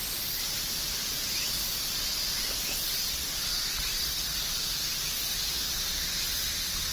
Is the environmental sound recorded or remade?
recorded